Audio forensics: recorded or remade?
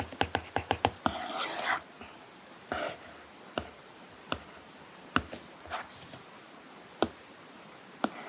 recorded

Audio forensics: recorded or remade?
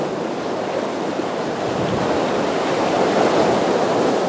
recorded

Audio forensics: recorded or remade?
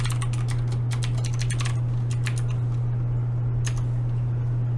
recorded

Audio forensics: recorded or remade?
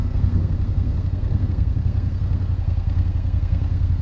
remade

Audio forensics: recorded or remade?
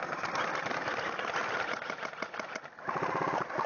recorded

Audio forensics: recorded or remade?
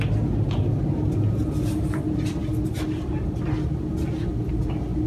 recorded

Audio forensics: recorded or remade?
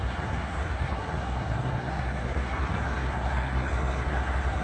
remade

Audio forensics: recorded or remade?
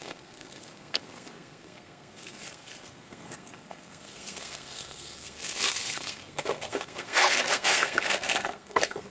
remade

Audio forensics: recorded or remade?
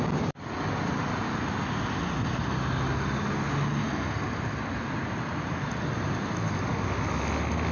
recorded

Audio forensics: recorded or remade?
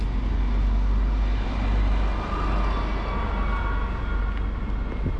recorded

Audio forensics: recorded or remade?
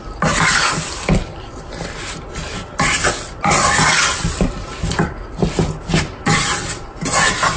recorded